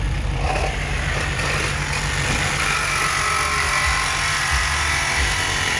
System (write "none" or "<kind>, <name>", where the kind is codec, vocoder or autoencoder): none